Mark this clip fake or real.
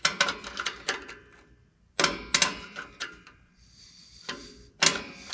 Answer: real